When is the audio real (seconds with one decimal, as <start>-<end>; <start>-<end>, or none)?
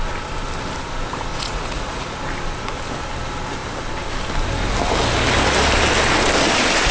0.0-1.3; 2.2-6.9